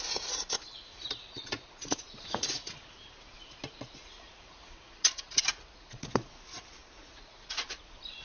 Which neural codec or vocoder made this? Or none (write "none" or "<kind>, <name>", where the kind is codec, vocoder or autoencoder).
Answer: vocoder, Vocos